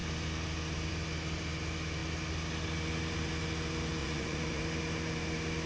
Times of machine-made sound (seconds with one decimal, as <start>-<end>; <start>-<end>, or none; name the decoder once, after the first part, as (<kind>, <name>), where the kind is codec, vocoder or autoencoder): 4.0-4.6 (vocoder, Vocos)